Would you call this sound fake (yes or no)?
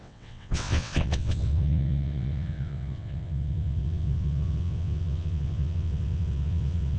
yes